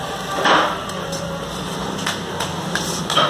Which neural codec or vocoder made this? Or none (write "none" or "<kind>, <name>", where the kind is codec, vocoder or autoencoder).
none